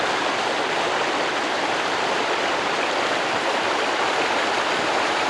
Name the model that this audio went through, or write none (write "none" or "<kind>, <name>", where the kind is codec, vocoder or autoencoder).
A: none